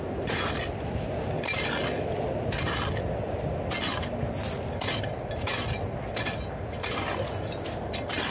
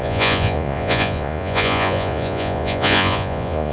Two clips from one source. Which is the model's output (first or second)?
second